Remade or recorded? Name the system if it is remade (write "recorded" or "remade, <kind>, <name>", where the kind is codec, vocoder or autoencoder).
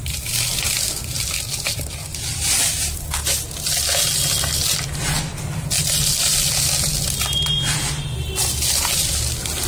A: recorded